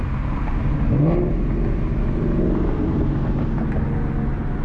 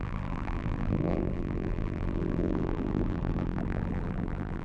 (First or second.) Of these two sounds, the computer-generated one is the second